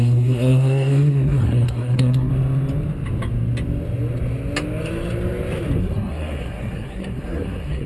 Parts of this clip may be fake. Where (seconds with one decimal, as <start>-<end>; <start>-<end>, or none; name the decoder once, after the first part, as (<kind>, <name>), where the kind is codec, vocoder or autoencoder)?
0.0-2.3 (codec, SNAC); 5.8-7.9

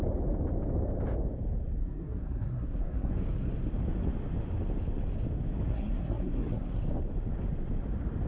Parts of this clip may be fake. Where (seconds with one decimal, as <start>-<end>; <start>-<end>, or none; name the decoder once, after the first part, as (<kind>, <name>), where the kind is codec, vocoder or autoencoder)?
1.8-3.1 (codec, SNAC); 5.7-6.8

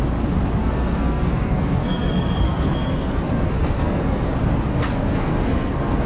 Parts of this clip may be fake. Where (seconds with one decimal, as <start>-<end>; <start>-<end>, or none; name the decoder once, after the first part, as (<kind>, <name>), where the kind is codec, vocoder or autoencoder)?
0.6-4.3 (codec, SNAC); 4.7-6.1

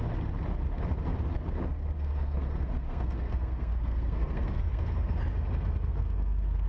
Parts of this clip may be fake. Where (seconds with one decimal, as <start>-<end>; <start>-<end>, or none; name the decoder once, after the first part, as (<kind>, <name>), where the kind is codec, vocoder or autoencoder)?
1.8-5.2 (codec, SNAC); 5.9-6.7